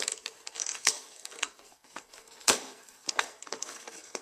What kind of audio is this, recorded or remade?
remade